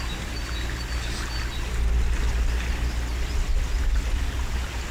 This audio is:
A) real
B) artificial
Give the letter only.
A